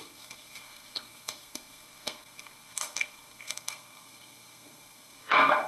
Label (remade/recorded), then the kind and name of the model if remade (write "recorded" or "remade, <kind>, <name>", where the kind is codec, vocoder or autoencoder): remade, codec, SNAC